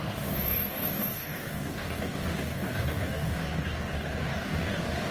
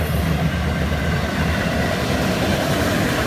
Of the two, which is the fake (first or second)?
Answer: first